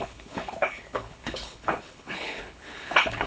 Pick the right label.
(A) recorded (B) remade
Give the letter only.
B